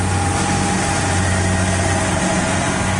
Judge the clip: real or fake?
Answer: real